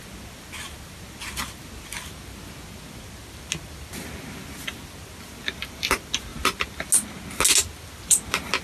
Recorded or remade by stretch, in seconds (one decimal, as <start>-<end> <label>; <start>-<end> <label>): 0.0-8.6 recorded